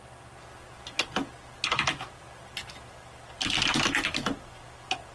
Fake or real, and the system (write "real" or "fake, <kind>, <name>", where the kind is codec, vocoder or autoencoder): real